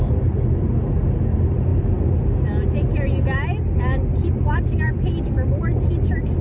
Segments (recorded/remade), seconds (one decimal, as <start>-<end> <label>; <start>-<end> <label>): 0.0-6.4 recorded